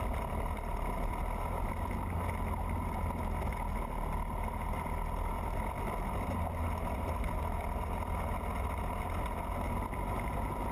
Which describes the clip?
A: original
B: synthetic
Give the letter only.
A